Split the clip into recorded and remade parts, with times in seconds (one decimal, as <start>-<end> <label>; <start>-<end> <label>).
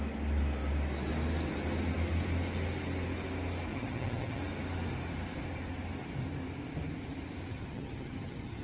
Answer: 0.0-3.7 recorded; 3.7-4.4 remade; 4.4-7.5 recorded; 7.5-8.6 remade